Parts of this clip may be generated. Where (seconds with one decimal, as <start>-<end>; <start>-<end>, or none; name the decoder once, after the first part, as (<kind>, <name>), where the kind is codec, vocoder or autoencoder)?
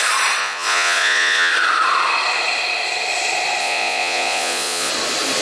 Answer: 0.4-1.5 (vocoder, Vocos); 3.6-4.9